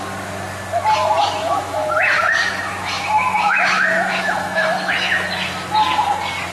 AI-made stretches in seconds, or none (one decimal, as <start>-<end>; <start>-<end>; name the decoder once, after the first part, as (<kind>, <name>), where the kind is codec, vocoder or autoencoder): 1.2-5.1 (autoencoder, DAC-VAE)